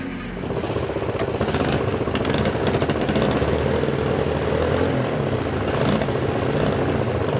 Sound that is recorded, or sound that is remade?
recorded